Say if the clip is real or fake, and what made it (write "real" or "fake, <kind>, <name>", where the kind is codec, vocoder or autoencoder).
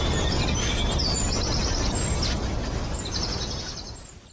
real